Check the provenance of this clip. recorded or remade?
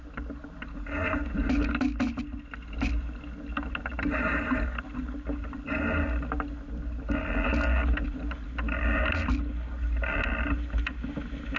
recorded